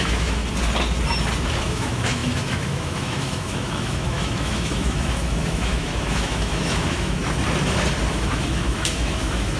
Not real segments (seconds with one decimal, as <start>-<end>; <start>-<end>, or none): 0.0-0.4; 1.6-7.2; 8.1-9.6